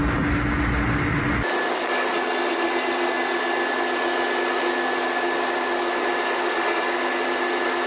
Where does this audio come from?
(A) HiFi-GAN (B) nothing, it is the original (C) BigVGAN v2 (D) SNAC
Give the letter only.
B